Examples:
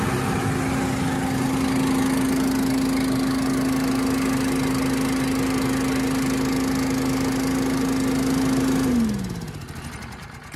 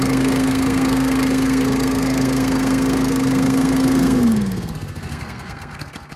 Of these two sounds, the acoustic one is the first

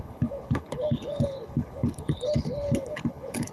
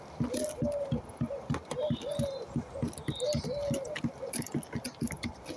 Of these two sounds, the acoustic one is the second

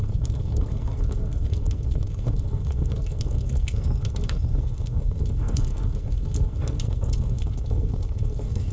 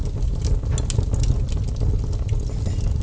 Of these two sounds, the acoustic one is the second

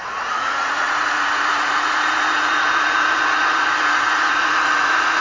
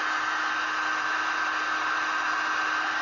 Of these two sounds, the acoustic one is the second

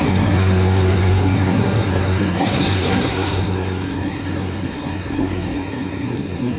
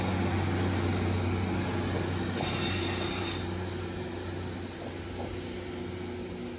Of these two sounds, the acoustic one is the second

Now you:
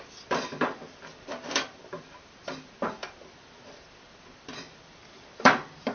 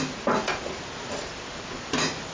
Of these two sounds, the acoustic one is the second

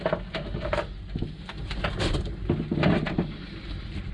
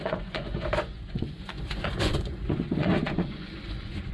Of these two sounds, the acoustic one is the first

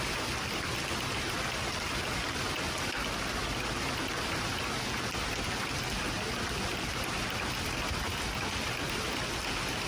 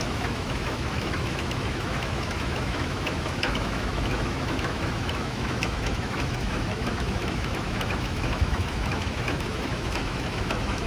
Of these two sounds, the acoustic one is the first